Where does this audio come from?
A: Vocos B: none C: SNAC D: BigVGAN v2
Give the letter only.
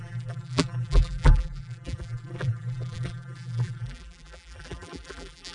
D